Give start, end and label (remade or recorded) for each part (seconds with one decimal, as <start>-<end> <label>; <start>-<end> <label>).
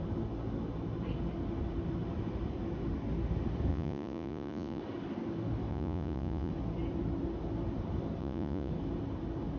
0.0-3.7 recorded; 3.7-4.8 remade; 4.8-5.7 recorded; 5.7-6.5 remade; 6.5-8.2 recorded; 8.2-8.7 remade; 8.7-9.6 recorded